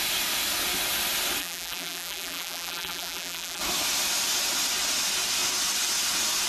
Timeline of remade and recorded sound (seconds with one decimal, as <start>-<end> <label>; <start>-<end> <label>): 0.0-1.4 recorded; 1.4-3.6 remade; 3.6-6.5 recorded